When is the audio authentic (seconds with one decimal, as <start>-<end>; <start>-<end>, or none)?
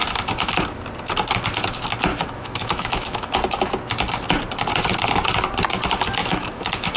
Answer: 0.0-2.1; 3.3-6.2